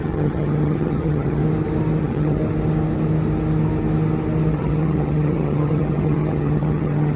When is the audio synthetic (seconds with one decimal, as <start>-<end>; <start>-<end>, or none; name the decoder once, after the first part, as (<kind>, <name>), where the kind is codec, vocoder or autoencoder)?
0.0-1.4 (vocoder, HiFi-GAN); 2.0-2.4; 4.5-7.2